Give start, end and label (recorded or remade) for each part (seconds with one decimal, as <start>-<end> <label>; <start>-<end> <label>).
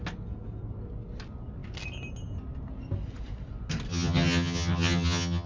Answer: 0.0-3.9 recorded; 3.9-5.5 remade